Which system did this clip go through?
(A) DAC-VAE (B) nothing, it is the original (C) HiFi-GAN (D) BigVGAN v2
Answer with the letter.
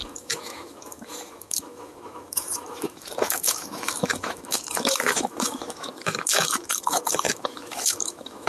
A